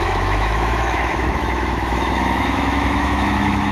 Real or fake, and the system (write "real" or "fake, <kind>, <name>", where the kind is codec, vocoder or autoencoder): fake, autoencoder, DAC-VAE